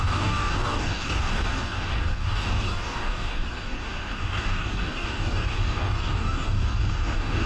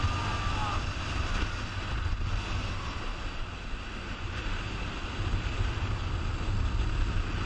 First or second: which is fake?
first